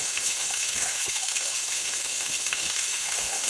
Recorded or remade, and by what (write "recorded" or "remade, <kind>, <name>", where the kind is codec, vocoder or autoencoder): remade, autoencoder, DAC-VAE